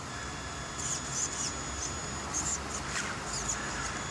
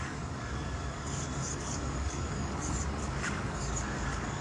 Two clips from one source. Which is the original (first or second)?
first